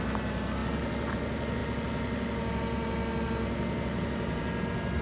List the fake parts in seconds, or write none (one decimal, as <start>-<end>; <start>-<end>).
none